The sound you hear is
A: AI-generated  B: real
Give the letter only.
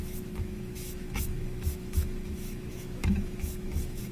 A